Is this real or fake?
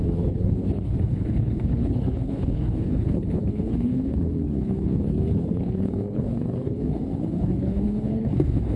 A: fake